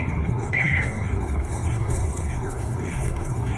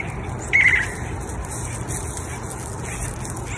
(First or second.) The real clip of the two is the second